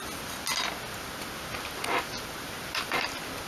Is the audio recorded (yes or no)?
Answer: yes